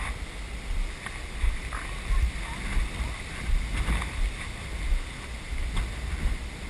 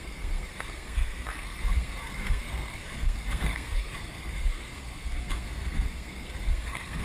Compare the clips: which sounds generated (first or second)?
second